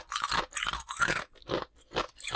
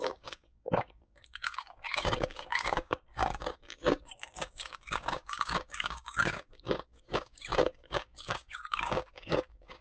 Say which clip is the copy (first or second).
second